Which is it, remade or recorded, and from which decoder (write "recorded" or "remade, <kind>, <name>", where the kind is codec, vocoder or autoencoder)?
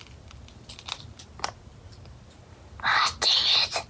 recorded